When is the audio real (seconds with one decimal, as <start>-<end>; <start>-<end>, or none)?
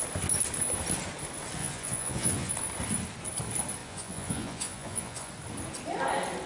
0.0-1.6; 2.5-3.8; 5.3-6.5